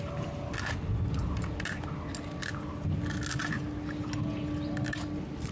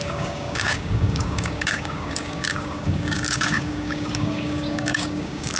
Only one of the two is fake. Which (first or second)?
second